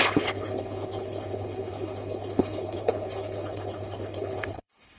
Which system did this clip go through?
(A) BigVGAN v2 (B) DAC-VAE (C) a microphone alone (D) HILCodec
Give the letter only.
D